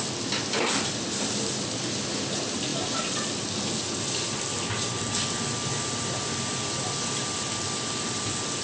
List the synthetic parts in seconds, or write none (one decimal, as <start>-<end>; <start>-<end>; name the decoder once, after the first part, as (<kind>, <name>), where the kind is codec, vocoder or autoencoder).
none